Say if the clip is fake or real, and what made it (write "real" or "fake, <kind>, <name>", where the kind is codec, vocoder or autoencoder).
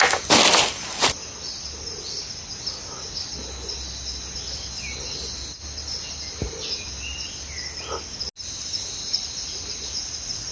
real